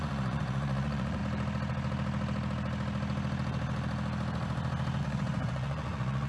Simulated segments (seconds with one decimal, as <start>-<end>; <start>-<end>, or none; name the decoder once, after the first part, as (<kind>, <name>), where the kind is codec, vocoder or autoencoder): 0.0-1.2 (vocoder, Vocos); 5.0-6.3